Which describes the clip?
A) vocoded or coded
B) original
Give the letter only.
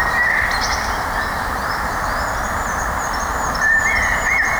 A